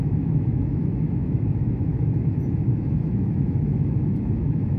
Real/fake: fake